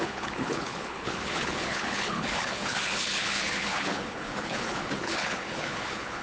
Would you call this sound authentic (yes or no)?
no